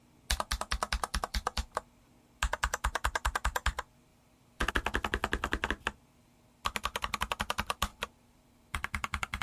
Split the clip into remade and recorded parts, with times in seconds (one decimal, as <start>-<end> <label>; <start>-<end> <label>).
0.0-1.1 recorded; 1.1-1.6 remade; 1.6-4.1 recorded; 4.1-4.7 remade; 4.7-7.9 recorded; 7.9-9.4 remade

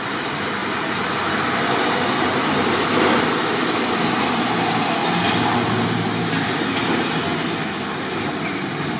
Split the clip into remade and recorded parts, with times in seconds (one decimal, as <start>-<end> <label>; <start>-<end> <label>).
0.0-9.0 recorded

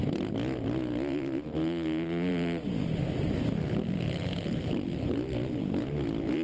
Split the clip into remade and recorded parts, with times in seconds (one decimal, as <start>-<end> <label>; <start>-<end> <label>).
0.0-2.3 recorded; 2.3-5.6 remade; 5.6-6.4 recorded

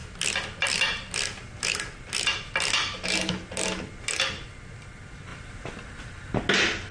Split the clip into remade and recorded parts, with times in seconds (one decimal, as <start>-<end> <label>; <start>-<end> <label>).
0.0-1.1 remade; 1.1-6.9 recorded

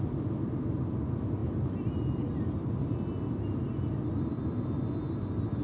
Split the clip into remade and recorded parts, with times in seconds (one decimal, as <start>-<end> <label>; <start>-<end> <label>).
0.0-5.6 recorded

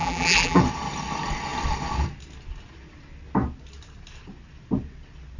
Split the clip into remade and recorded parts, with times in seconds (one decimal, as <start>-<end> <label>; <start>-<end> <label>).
0.0-0.6 remade; 0.6-5.4 recorded

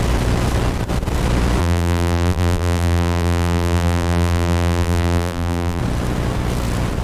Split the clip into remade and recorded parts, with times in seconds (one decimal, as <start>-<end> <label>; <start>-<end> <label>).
0.0-1.6 recorded; 1.6-5.8 remade; 5.8-7.0 recorded

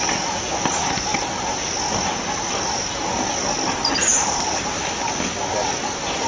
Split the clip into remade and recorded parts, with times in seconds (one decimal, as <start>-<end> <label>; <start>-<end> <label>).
0.0-4.1 recorded; 4.1-4.8 remade; 4.8-6.3 recorded